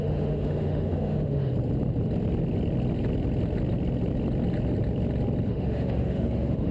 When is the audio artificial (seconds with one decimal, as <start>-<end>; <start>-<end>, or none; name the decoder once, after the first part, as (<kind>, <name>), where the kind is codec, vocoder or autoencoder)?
0.0-1.5 (autoencoder, DAC-VAE); 5.5-6.7